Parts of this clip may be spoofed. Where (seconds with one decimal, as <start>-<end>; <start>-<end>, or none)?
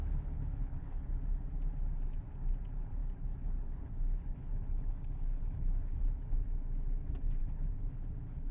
0.0-1.1; 3.0-6.0; 7.4-8.5